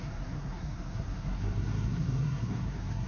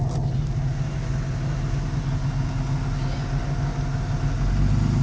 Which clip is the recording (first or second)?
second